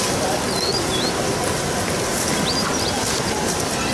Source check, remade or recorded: recorded